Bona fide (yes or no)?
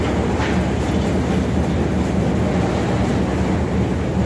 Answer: yes